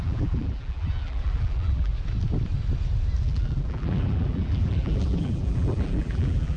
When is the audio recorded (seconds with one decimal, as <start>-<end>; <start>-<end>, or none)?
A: 1.9-3.2